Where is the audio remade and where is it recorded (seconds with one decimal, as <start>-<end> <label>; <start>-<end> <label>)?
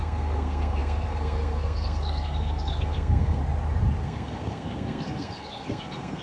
0.0-3.4 remade; 3.4-4.0 recorded; 4.0-6.2 remade